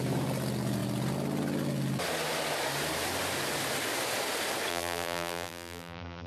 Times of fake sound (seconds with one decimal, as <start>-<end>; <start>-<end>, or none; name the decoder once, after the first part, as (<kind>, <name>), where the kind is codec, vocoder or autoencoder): 4.7-6.3 (vocoder, BigVGAN v2)